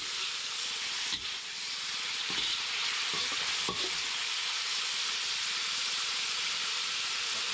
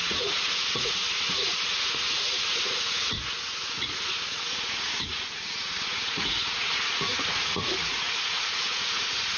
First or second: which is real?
first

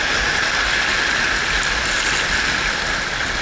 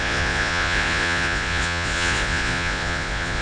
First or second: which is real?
first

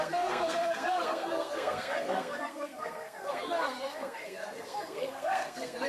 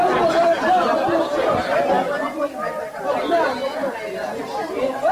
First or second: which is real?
second